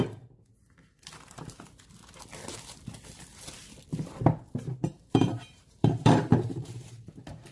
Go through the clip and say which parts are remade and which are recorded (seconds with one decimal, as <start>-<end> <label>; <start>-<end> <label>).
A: 0.0-3.9 recorded; 3.9-7.1 remade; 7.1-7.5 recorded